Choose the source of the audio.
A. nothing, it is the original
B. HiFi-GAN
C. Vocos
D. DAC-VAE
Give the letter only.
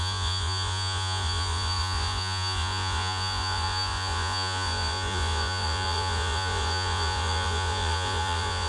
C